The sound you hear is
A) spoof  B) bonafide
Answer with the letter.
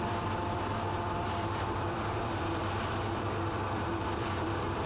A